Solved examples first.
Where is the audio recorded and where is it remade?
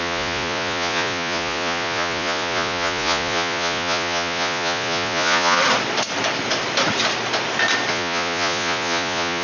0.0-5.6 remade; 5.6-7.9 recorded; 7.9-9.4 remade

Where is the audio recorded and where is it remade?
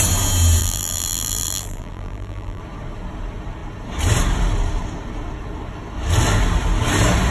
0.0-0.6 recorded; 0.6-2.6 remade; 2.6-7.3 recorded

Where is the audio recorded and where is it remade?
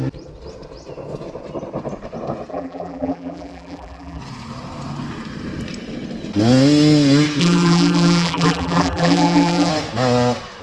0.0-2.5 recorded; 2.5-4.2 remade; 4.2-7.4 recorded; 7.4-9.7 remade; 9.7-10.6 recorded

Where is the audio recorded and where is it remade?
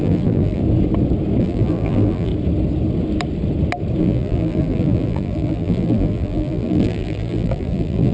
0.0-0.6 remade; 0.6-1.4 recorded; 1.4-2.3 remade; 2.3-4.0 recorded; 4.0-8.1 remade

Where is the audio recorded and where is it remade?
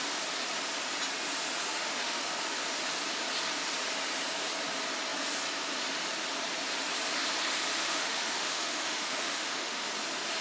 0.0-1.7 recorded; 1.7-2.3 remade; 2.3-7.8 recorded; 7.8-9.9 remade; 9.9-10.4 recorded